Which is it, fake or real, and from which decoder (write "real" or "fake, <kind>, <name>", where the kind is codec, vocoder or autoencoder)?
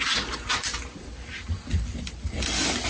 real